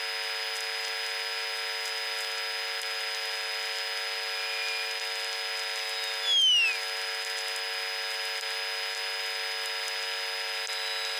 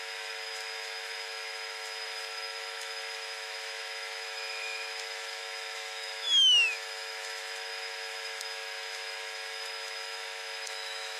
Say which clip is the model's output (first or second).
second